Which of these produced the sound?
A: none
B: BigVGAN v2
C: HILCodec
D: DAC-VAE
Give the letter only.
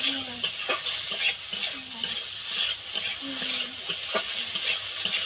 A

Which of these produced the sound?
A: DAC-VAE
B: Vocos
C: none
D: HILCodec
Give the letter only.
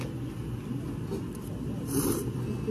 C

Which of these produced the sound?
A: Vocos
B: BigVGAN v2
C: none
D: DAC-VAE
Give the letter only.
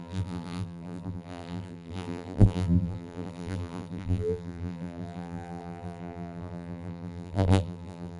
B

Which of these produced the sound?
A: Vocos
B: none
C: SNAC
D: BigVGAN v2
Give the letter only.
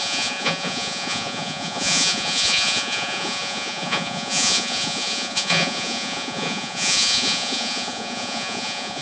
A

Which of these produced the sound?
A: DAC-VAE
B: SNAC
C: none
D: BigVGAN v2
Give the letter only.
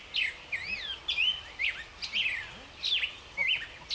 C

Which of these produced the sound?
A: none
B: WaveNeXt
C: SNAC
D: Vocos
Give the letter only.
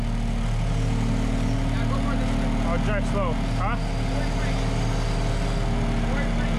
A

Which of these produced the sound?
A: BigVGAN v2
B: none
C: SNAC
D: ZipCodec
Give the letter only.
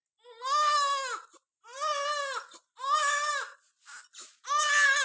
B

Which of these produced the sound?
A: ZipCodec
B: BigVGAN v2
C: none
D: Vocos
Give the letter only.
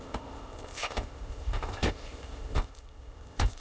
A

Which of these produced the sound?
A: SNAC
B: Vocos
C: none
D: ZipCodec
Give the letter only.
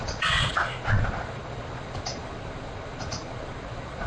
B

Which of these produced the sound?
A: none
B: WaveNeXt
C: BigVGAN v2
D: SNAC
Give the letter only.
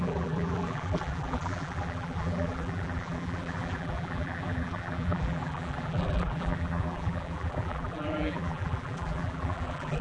C